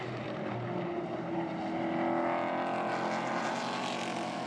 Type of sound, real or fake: real